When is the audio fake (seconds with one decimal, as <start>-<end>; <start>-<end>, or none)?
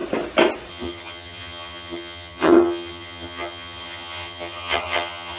0.7-5.4